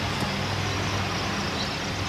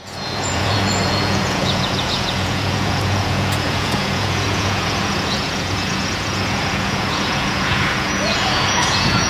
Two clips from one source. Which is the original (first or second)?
first